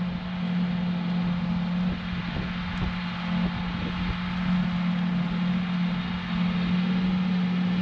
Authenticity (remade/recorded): recorded